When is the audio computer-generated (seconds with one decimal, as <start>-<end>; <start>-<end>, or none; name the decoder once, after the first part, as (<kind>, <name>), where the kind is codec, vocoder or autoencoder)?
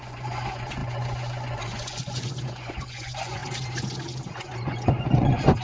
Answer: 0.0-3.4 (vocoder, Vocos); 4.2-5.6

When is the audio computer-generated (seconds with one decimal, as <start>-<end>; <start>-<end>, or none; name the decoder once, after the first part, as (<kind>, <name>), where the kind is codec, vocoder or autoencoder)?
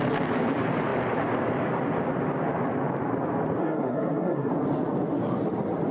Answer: 3.6-4.5 (codec, SNAC)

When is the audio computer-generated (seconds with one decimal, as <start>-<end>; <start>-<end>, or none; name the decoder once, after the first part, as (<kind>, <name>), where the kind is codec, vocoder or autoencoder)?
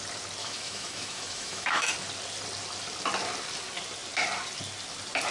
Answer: 0.4-1.9 (autoencoder, DAC-VAE)